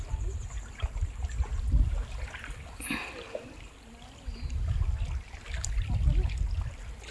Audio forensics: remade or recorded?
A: recorded